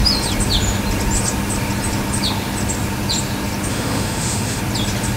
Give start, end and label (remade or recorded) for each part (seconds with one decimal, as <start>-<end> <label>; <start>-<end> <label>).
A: 0.0-3.7 recorded; 3.7-4.6 remade; 4.6-5.2 recorded